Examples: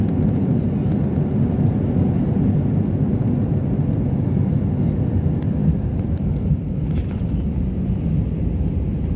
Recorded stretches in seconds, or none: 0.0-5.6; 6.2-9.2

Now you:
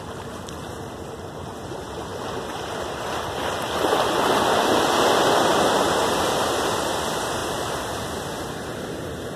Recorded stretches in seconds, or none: 0.0-7.4; 8.1-9.4

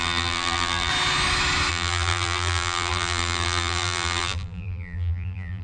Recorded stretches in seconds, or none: 0.9-1.7

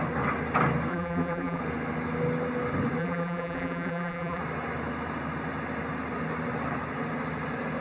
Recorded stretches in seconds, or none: 0.0-0.9; 1.6-3.0; 4.4-7.8

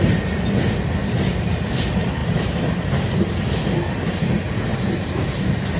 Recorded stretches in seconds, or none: 0.0-1.0; 1.6-2.2; 3.2-4.7